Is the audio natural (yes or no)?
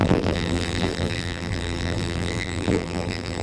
no